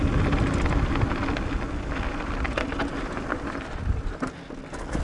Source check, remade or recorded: recorded